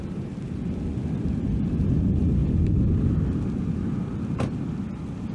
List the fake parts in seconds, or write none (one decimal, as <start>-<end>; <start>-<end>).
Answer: none